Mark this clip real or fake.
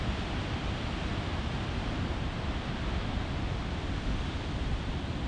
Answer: real